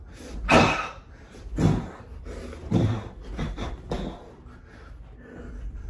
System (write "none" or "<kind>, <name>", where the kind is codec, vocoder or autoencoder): none